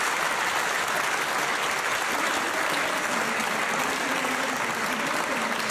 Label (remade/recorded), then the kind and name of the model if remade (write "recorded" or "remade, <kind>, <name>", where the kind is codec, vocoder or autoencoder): recorded